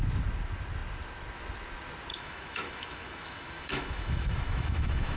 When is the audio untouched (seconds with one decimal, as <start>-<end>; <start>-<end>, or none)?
0.0-2.1